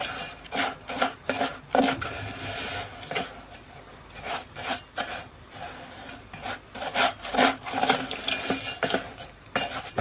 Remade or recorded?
recorded